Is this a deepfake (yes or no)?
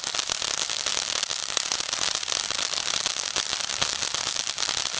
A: yes